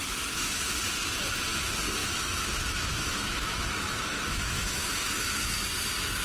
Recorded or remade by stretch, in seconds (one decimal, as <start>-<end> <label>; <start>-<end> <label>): 0.0-2.0 recorded; 2.0-5.7 remade; 5.7-6.2 recorded